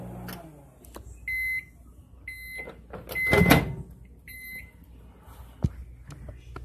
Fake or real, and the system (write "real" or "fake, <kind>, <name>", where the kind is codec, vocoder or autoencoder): real